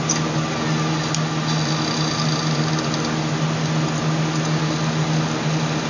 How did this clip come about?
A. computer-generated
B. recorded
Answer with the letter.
B